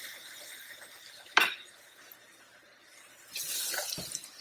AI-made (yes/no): no